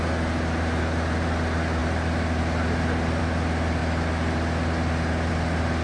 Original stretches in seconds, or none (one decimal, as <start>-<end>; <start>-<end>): 0.0-5.8